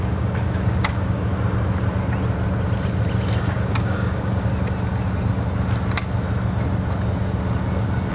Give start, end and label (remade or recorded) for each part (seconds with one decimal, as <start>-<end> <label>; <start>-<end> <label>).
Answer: 0.0-1.3 remade; 1.3-3.4 recorded; 3.4-4.5 remade; 4.5-8.1 recorded